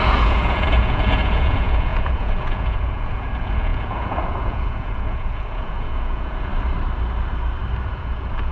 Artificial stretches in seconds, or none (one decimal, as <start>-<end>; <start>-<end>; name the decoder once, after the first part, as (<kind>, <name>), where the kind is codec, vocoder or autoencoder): 0.0-6.5 (vocoder, Vocos); 7.9-8.5